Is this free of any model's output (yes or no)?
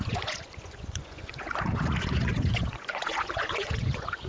no